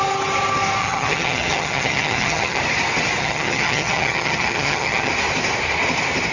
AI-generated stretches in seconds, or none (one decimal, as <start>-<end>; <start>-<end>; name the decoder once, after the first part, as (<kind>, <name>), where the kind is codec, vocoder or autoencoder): 0.8-2.6 (vocoder, HiFi-GAN); 3.2-5.1